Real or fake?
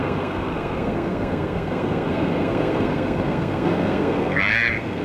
fake